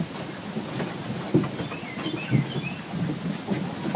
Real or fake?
real